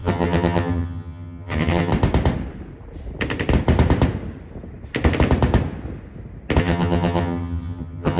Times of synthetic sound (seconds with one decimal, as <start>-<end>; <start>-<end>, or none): 0.0-1.9; 6.6-8.2

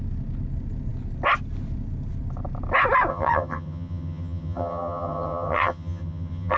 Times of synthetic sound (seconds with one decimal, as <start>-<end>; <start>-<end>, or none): 3.1-6.6